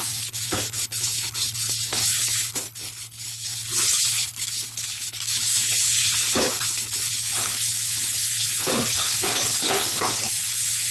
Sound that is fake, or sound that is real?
fake